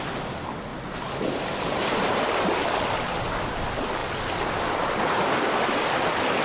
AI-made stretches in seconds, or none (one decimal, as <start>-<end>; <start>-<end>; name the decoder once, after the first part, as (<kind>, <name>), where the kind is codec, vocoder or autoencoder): none